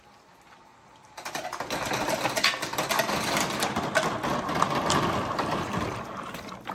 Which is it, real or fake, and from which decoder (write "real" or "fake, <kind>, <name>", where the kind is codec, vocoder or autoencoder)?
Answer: real